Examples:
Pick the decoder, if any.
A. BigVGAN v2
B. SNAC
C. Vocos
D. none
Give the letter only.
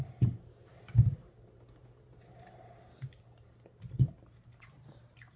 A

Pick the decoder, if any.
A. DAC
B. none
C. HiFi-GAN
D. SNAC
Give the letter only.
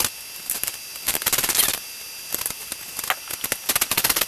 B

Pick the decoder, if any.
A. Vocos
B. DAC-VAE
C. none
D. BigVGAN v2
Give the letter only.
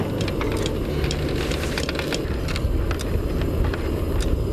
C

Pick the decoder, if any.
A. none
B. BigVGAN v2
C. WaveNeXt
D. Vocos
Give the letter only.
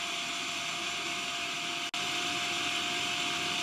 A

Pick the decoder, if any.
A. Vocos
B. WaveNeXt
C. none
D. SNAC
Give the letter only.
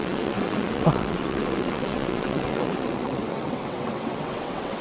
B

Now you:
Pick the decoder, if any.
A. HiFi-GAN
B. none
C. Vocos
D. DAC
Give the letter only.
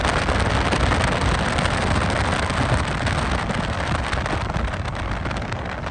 B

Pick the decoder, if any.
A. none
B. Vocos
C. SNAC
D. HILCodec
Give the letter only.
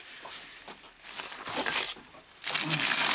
A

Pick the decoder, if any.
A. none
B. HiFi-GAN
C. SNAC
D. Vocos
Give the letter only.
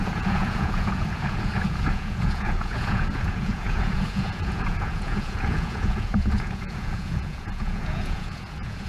D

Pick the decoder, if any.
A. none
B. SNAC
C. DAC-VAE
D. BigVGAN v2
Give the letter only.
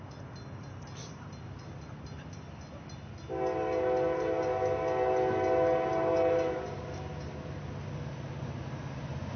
A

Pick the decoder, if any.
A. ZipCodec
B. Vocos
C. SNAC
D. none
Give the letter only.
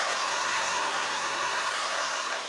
C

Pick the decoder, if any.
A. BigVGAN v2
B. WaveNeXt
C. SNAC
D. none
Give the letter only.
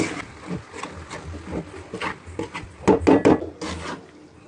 D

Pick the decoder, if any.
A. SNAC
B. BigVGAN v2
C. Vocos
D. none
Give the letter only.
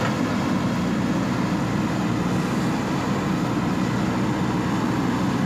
D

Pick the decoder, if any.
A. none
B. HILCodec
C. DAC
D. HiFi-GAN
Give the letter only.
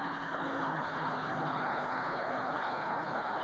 B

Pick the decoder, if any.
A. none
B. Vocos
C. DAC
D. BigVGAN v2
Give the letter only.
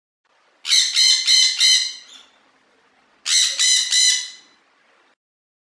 A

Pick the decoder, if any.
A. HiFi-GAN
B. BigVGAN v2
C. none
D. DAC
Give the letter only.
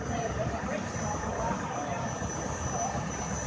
C